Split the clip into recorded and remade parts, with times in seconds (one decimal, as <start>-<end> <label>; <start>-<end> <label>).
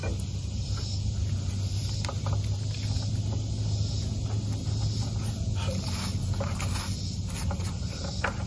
0.0-8.5 recorded